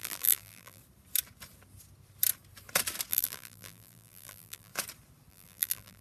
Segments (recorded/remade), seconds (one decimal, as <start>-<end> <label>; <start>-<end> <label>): 0.0-0.8 remade; 0.8-3.1 recorded; 3.1-4.7 remade; 4.7-5.3 recorded; 5.3-6.0 remade